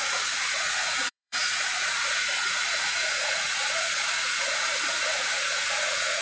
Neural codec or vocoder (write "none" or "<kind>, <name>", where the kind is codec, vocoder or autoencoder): vocoder, Vocos